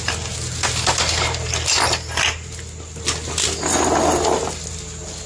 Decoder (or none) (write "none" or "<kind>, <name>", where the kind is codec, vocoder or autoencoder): none